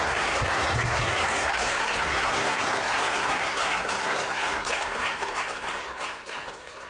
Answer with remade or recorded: remade